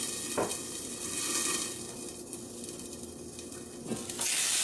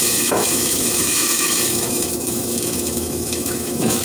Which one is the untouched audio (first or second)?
first